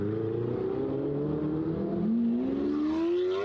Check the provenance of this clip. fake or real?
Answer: real